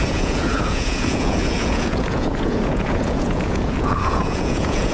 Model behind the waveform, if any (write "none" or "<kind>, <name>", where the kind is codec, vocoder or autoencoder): vocoder, Vocos